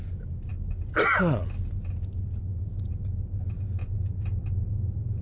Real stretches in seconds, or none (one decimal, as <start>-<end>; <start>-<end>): 0.0-5.2